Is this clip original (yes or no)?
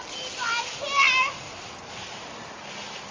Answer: yes